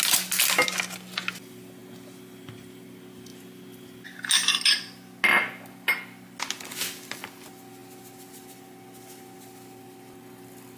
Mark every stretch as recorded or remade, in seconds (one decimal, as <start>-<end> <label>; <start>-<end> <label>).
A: 0.0-10.8 recorded